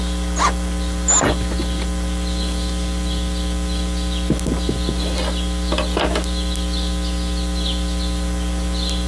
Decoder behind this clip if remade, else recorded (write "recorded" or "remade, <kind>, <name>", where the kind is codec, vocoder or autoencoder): recorded